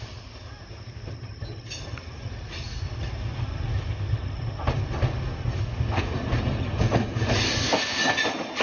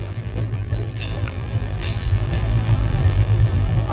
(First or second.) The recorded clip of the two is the first